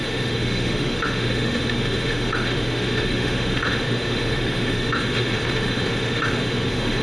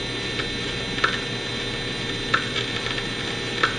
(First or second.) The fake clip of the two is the first